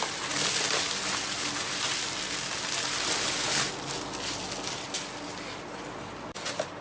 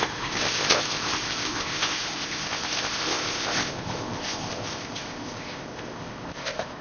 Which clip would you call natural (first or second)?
first